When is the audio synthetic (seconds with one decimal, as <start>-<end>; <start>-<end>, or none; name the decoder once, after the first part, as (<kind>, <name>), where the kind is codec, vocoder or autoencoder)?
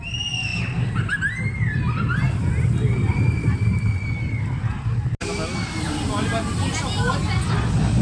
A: none